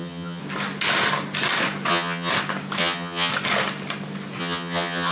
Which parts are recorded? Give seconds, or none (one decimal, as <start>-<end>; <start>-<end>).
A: 0.4-1.9; 2.3-2.8; 3.3-4.4